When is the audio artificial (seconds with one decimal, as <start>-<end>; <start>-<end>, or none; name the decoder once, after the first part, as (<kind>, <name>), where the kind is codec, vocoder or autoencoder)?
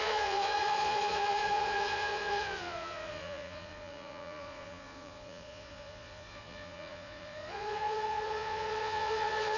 0.0-9.6 (vocoder, Vocos)